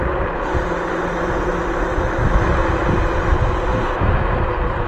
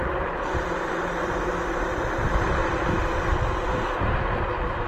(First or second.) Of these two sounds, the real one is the first